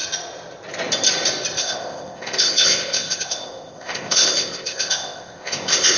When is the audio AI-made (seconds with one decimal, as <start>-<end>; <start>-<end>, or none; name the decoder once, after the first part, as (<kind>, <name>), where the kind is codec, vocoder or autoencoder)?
1.6-6.0 (codec, ZipCodec)

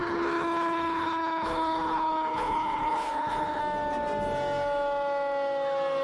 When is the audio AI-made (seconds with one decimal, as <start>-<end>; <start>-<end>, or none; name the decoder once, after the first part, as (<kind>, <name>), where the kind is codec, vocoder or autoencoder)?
0.0-3.6 (codec, HILCodec)

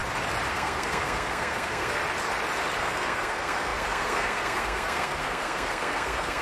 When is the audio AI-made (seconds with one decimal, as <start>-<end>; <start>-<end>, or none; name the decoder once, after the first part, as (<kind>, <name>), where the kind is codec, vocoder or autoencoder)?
0.5-2.0 (codec, SNAC); 2.8-6.4

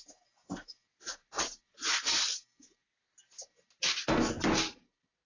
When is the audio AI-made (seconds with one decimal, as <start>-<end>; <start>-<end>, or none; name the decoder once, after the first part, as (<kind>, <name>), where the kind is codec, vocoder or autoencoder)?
1.0-2.2 (vocoder, BigVGAN v2)

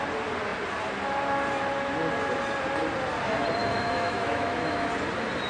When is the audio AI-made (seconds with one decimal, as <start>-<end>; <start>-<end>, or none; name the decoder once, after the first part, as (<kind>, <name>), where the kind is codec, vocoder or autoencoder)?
3.6-4.9 (autoencoder, DAC-VAE)

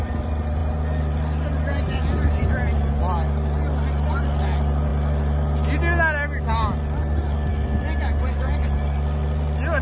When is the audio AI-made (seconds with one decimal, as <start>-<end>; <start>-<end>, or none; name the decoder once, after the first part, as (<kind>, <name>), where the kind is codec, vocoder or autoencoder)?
none

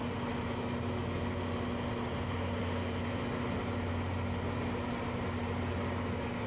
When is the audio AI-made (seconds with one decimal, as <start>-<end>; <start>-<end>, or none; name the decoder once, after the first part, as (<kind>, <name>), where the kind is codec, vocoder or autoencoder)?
none

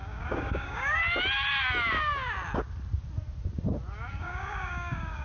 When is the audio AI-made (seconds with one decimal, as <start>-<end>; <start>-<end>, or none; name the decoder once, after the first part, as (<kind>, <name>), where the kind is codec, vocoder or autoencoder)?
0.0-1.0 (codec, DAC); 4.1-5.2